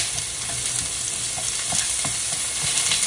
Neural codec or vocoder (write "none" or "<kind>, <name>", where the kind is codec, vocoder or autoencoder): none